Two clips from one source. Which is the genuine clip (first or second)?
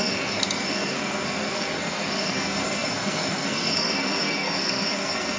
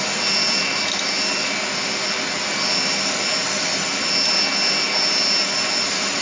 second